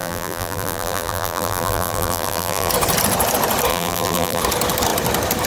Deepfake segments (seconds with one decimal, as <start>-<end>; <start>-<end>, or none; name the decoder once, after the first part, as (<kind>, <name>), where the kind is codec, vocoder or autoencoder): 0.0-2.7 (vocoder, BigVGAN v2); 3.7-4.4